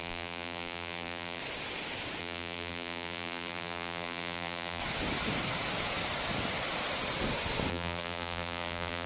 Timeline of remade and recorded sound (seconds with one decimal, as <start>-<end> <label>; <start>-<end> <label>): 0.0-1.4 remade; 1.4-2.2 recorded; 2.2-4.8 remade; 4.8-7.7 recorded; 7.7-9.1 remade